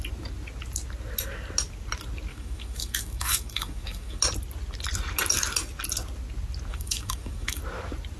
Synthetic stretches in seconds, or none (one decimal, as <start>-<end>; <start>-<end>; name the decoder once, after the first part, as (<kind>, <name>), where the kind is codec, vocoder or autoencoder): 2.3-4.2 (autoencoder, DAC-VAE); 6.7-7.6